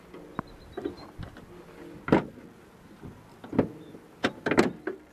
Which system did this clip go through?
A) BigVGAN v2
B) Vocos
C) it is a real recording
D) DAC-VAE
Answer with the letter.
C